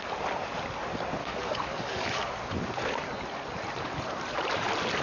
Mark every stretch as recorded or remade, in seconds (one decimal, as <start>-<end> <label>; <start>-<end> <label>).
0.0-1.2 recorded; 1.2-2.4 remade; 2.4-5.0 recorded